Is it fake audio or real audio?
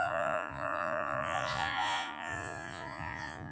fake